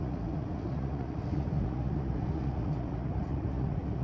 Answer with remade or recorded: remade